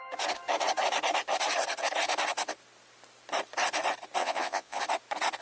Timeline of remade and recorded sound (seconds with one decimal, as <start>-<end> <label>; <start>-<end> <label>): 0.0-4.2 recorded; 4.2-4.8 remade; 4.8-5.4 recorded